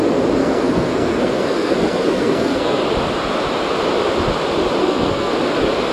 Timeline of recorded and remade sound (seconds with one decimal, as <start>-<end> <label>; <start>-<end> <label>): 0.0-0.4 recorded; 0.4-2.8 remade; 2.8-4.8 recorded; 4.8-5.3 remade; 5.3-5.9 recorded

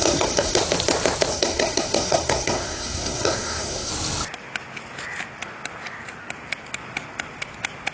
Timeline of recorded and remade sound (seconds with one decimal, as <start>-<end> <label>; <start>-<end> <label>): 0.0-0.6 remade; 0.6-1.3 recorded; 1.3-3.9 remade; 3.9-7.9 recorded

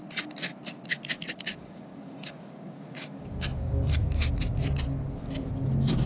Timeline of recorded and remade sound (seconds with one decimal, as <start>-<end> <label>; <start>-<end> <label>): 0.0-1.5 recorded; 1.5-3.5 remade; 3.5-6.1 recorded

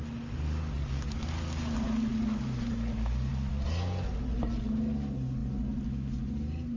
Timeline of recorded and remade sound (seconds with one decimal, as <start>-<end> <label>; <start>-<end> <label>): 0.0-6.8 recorded